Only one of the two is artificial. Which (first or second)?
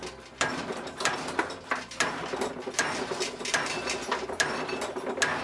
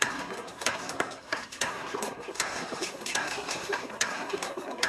second